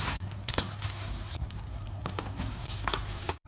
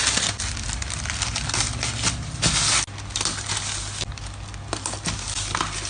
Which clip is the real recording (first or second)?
second